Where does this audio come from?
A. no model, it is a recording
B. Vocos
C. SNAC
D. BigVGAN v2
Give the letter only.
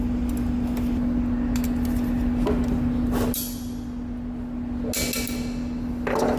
A